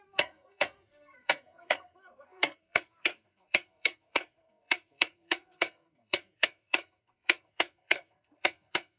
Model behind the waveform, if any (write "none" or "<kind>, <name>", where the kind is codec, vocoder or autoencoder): codec, SNAC